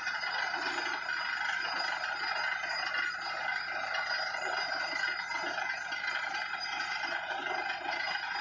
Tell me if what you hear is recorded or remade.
recorded